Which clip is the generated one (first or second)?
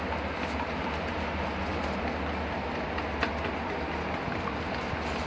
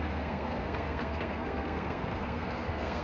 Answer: second